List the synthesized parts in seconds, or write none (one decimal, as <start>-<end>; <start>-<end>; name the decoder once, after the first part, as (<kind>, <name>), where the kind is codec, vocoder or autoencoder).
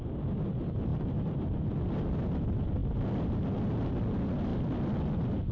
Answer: 0.9-1.5 (vocoder, BigVGAN v2); 4.5-5.5